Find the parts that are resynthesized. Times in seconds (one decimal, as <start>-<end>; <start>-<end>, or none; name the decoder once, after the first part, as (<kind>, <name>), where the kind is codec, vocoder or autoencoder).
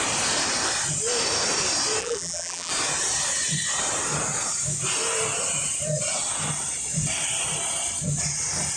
2.0-2.7 (vocoder, BigVGAN v2)